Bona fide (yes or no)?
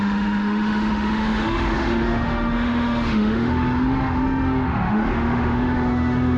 no